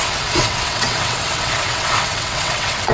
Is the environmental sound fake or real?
fake